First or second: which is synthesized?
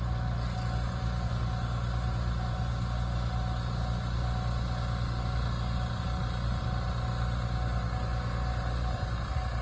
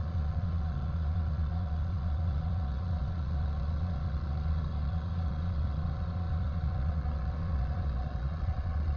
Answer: second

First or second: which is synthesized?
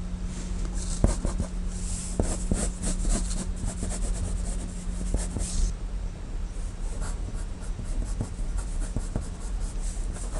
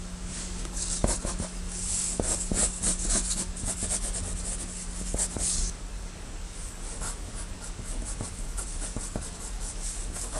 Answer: second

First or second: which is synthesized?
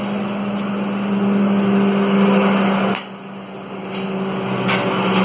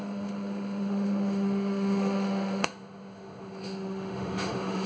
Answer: second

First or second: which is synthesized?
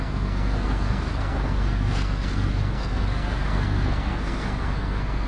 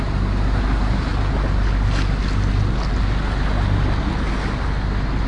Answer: first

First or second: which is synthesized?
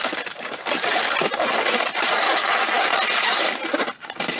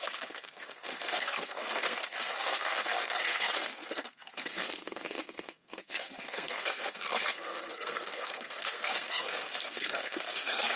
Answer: second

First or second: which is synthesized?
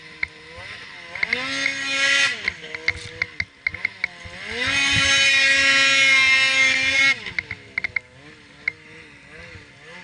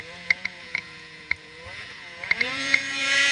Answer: second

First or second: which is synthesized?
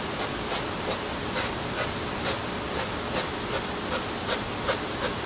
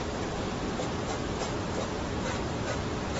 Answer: second